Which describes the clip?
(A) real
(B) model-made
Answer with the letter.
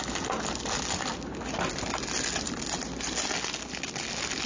A